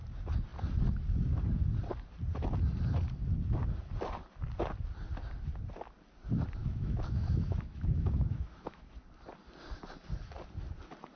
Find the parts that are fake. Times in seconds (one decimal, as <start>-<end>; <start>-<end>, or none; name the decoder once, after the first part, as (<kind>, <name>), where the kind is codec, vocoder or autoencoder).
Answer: 6.6-8.9 (autoencoder, DAC-VAE)